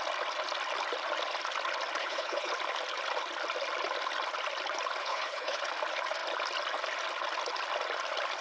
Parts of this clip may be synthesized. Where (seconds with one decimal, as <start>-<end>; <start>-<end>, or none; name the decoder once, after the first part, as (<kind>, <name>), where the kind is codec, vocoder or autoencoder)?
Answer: 2.0-2.5 (codec, HILCodec); 5.0-5.6